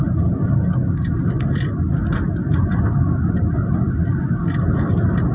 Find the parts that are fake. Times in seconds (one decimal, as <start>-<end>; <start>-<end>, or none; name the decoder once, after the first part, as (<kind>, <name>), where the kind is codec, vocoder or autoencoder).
none